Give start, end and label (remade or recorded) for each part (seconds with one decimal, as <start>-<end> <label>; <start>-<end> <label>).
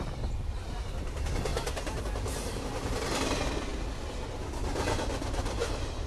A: 0.0-6.1 recorded